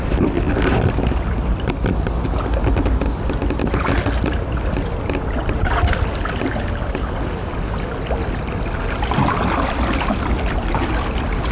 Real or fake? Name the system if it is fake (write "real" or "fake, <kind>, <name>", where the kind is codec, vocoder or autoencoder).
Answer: real